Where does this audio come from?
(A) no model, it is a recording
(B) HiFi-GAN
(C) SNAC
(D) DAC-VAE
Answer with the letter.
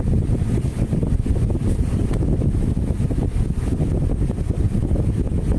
A